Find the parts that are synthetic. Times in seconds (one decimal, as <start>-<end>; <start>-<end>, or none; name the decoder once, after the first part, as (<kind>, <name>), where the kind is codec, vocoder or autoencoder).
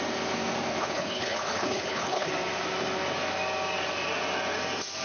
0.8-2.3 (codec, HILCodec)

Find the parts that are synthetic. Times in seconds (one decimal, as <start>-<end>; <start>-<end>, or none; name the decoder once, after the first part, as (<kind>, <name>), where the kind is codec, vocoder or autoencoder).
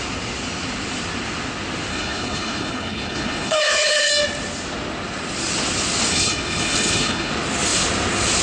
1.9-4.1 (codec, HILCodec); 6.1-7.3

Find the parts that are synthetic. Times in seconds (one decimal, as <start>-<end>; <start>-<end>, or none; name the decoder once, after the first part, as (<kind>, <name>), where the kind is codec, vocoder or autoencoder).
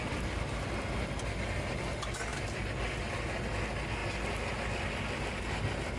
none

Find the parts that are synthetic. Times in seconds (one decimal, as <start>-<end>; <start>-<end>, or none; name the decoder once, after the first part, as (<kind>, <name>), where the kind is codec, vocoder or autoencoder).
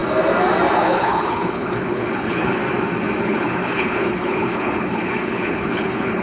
0.8-2.6 (codec, HILCodec); 3.2-6.2